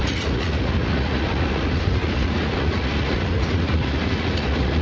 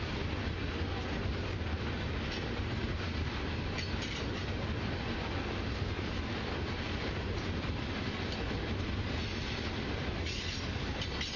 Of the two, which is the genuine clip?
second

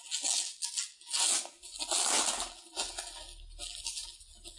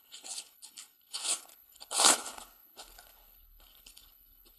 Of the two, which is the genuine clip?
first